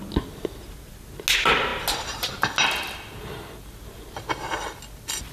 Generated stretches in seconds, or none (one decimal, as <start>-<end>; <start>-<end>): none